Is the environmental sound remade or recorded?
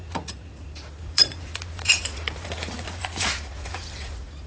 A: remade